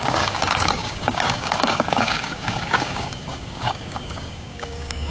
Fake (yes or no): yes